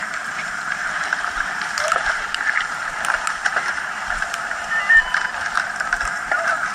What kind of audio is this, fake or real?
fake